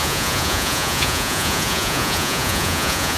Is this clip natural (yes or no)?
no